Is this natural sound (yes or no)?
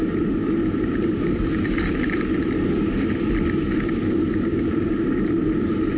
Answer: no